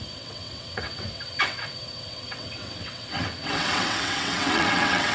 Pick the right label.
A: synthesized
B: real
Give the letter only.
A